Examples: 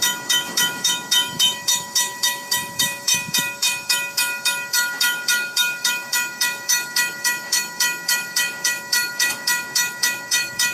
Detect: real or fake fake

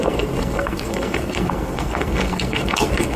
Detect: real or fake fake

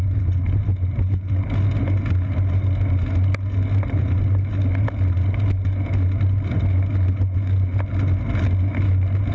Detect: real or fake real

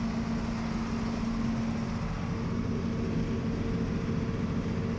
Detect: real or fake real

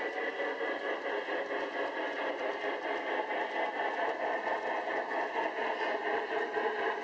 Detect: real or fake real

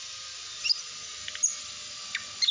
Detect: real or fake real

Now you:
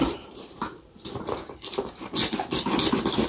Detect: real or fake fake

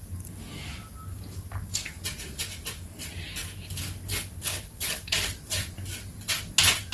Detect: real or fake real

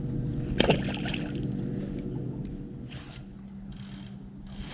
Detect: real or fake real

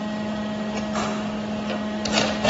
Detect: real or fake real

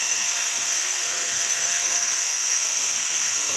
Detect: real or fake fake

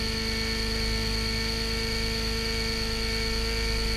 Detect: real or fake real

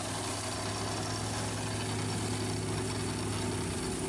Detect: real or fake real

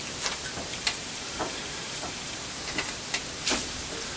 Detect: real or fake fake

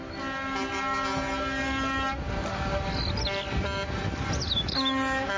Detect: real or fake real